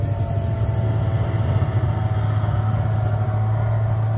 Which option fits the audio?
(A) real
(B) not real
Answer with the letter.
A